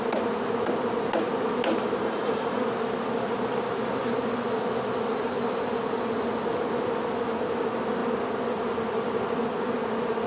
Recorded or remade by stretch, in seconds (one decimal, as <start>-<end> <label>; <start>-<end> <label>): 0.0-2.0 recorded; 2.0-2.6 remade; 2.6-10.3 recorded